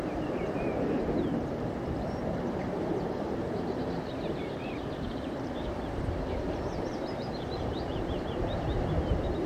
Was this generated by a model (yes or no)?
yes